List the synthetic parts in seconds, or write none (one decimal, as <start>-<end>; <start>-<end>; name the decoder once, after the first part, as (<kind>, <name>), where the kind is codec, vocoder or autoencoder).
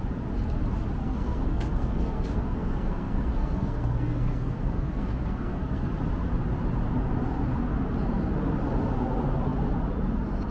1.0-5.9 (codec, SNAC)